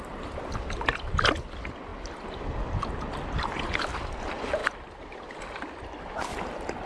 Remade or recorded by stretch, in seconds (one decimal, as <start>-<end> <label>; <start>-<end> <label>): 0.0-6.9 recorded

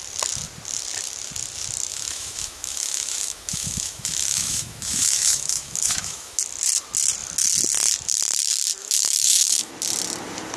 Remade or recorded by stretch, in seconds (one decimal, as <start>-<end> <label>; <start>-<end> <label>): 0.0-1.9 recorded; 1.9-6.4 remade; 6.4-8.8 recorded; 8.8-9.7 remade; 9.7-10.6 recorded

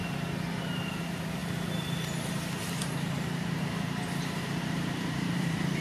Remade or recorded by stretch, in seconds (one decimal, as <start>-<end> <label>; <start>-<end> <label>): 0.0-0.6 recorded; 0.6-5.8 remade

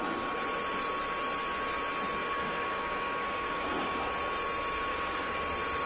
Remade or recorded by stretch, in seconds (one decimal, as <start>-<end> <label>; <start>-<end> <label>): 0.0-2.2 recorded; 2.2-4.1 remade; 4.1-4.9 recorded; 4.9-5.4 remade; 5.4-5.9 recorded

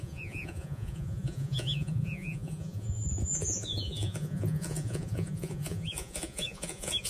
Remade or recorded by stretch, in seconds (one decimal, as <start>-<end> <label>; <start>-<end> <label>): 0.0-7.1 remade

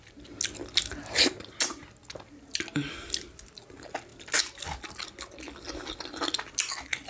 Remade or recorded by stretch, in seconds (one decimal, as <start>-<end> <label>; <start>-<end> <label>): 0.0-7.1 recorded